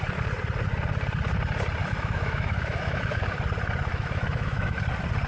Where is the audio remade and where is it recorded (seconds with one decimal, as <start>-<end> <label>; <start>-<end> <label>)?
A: 0.0-1.8 recorded; 1.8-3.2 remade; 3.2-3.9 recorded; 3.9-4.8 remade; 4.8-5.3 recorded

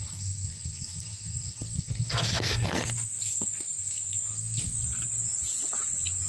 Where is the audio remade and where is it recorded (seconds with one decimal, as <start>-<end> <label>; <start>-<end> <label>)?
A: 0.0-4.8 remade; 4.8-6.3 recorded

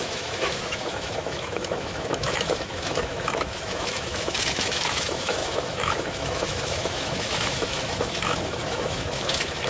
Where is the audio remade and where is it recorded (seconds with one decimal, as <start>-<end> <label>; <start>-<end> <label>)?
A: 0.0-9.7 remade

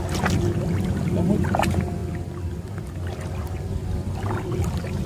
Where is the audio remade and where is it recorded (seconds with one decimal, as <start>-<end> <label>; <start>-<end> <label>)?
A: 0.0-5.1 recorded

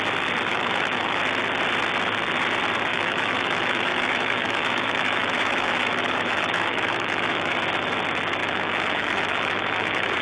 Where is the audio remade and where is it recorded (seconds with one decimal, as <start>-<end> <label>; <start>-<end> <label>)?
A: 0.0-0.5 recorded; 0.5-1.2 remade; 1.2-2.9 recorded; 2.9-7.5 remade; 7.5-8.4 recorded; 8.4-10.2 remade

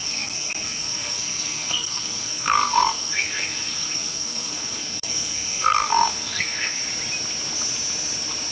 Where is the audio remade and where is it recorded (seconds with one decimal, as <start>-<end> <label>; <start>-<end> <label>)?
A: 0.0-6.8 remade; 6.8-8.5 recorded